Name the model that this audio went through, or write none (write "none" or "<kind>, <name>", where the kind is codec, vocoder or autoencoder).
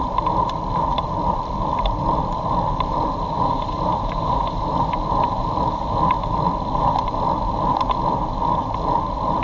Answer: vocoder, BigVGAN v2